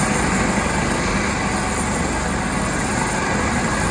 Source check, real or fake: real